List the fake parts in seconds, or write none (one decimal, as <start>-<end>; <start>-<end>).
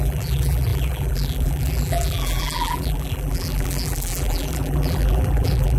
0.0-5.8